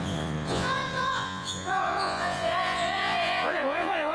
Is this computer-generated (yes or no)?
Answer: yes